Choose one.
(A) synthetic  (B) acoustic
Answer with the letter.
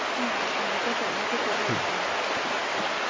B